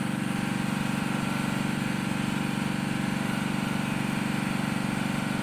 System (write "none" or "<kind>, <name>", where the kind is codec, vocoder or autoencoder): none